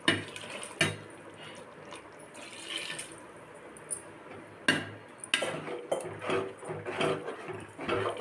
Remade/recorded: recorded